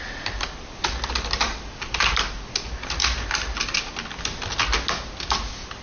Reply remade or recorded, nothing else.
recorded